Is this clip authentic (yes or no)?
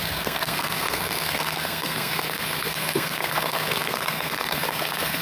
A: no